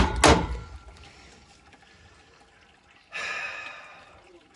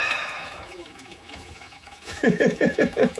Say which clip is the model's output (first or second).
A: second